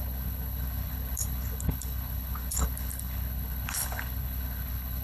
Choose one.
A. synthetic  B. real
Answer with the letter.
A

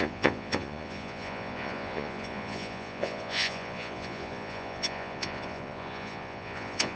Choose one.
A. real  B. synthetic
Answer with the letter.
B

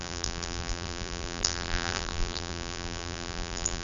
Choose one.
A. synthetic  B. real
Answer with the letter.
A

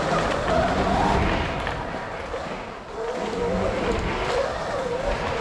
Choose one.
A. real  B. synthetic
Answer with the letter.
A